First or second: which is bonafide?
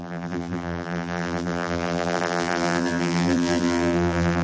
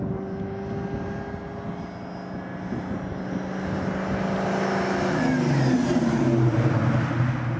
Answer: second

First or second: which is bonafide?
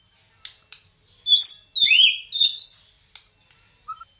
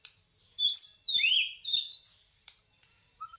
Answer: first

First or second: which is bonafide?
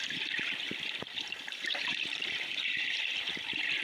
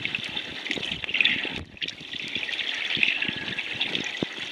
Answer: second